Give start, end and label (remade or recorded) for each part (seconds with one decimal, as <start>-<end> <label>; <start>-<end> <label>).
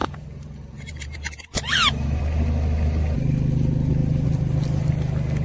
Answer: 0.0-2.2 remade; 2.2-4.0 recorded; 4.0-4.9 remade; 4.9-5.4 recorded